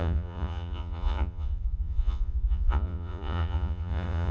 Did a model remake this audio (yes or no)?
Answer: yes